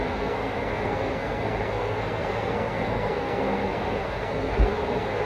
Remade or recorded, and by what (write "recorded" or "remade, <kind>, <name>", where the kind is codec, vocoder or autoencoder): remade, codec, SNAC